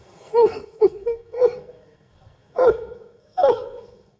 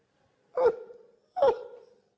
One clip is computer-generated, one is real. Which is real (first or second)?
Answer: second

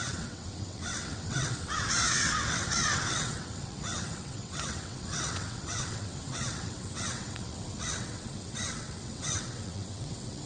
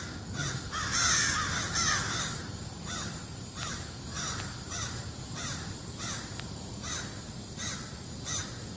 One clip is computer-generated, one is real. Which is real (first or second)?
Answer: second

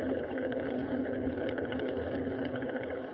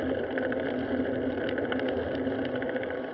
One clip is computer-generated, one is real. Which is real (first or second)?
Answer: second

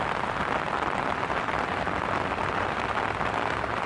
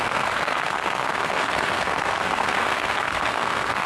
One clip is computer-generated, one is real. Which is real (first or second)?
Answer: first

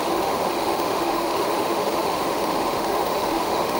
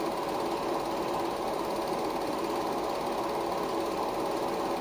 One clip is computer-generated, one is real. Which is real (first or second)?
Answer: second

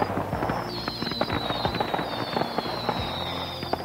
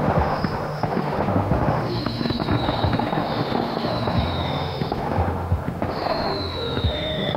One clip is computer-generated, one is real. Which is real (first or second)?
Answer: first